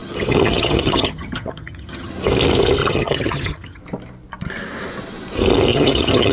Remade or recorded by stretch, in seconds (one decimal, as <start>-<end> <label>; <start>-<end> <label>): 0.0-2.1 remade; 2.1-2.8 recorded; 2.8-3.8 remade; 3.8-5.7 recorded; 5.7-6.3 remade